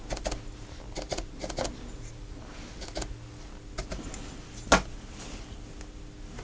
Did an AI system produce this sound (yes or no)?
no